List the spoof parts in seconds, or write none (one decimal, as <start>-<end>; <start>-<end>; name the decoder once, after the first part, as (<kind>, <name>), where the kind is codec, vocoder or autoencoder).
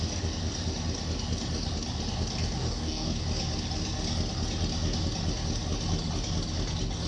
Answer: 2.6-3.2 (codec, DAC)